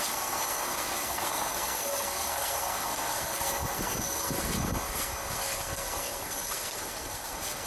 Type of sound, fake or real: fake